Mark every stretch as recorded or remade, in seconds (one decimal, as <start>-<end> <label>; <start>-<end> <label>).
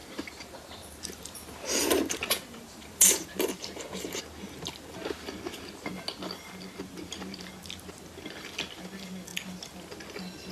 0.0-4.2 remade; 4.2-10.5 recorded